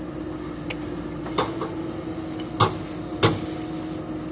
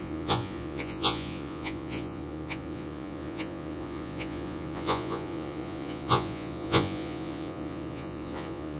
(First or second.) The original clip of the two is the first